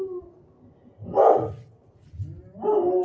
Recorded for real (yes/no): yes